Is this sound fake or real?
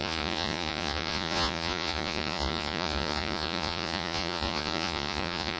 fake